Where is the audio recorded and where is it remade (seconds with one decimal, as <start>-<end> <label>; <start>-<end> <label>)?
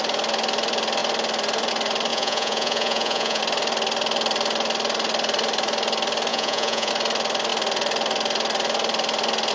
0.0-2.1 recorded; 2.1-3.4 remade; 3.4-6.3 recorded; 6.3-6.9 remade; 6.9-9.5 recorded